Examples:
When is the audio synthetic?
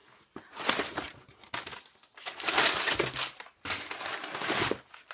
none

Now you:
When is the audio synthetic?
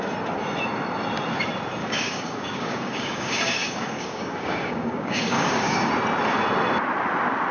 1.8-5.9 (codec, DAC)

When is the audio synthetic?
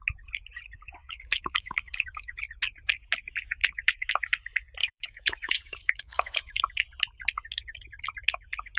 1.0-2.4 (codec, DAC); 3.6-4.1; 4.8-6.6